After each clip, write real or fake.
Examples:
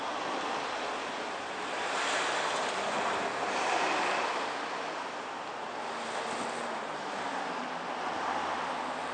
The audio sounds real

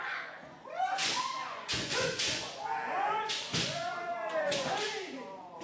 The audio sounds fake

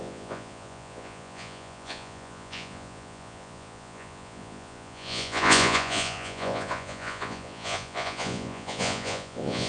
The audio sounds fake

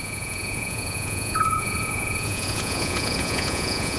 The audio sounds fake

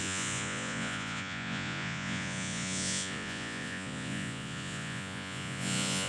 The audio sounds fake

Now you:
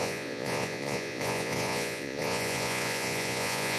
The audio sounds fake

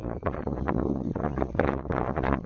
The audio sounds fake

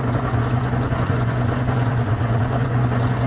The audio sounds fake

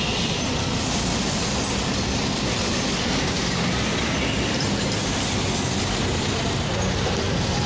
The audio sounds real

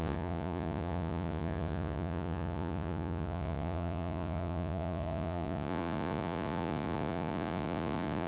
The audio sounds fake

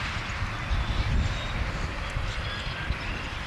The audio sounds real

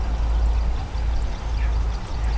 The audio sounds real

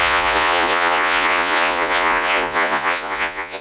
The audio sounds fake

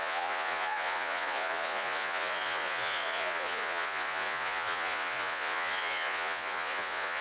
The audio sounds fake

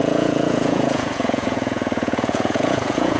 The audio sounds fake